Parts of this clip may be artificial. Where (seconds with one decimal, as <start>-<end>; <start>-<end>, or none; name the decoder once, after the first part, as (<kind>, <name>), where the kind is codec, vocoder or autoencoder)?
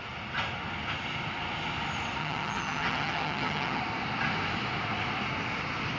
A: 2.2-3.8 (vocoder, HiFi-GAN)